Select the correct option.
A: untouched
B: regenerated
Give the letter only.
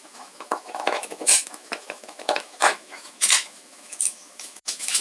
B